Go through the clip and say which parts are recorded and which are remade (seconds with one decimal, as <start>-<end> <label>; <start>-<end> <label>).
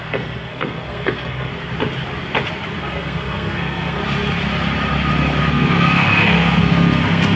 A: 0.0-1.5 remade; 1.5-2.8 recorded; 2.8-4.0 remade; 4.0-5.5 recorded; 5.5-7.4 remade